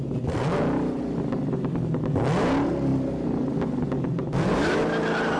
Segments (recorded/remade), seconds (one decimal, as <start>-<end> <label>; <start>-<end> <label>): 0.0-5.4 recorded

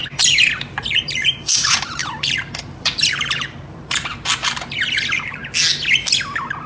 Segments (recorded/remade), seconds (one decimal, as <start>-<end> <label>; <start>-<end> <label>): 0.0-0.7 recorded; 0.7-5.4 remade; 5.4-6.7 recorded

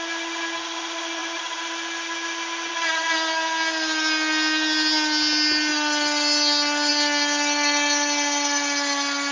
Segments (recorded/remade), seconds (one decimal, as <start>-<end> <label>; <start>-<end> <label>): 0.0-9.3 recorded